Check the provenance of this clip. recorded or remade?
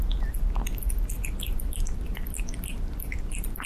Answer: recorded